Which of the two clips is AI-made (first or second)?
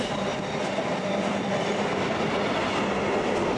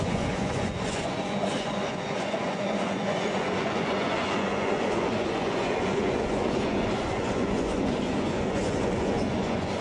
second